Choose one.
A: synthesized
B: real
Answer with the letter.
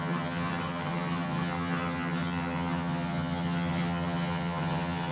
A